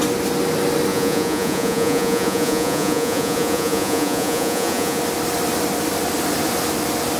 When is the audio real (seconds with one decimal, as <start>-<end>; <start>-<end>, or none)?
0.0-0.9; 5.0-7.2